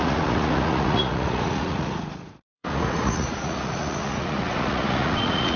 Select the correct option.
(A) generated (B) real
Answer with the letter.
A